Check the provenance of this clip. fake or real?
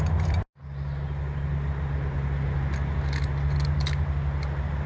real